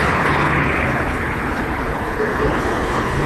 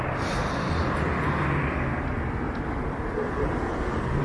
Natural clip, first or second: second